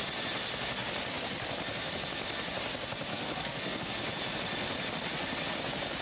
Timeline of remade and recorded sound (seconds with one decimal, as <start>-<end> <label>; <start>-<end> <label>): 0.0-3.1 recorded; 3.1-3.8 remade; 3.8-6.0 recorded

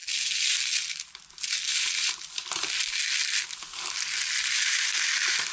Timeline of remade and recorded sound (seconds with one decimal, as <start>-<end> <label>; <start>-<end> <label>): 0.0-5.5 recorded

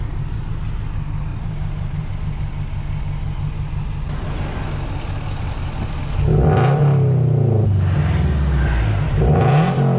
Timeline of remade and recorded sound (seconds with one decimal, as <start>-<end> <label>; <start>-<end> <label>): 0.0-1.3 recorded; 1.3-2.1 remade; 2.1-10.0 recorded

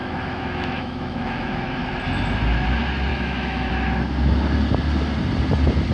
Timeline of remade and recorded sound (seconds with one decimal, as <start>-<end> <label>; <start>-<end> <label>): 0.0-1.9 remade; 1.9-3.1 recorded; 3.1-3.7 remade; 3.7-5.9 recorded

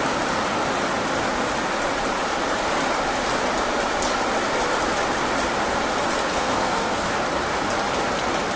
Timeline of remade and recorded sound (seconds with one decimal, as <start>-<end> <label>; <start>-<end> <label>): 0.0-6.3 recorded; 6.3-7.1 remade; 7.1-8.6 recorded